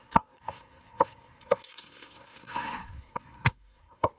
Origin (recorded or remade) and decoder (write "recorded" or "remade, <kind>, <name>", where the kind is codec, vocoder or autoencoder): remade, codec, SNAC